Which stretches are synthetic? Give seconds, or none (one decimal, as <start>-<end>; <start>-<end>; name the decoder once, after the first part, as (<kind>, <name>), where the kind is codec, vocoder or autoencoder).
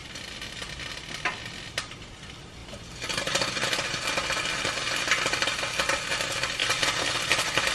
none